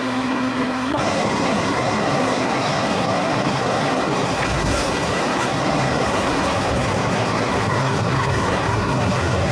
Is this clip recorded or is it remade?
remade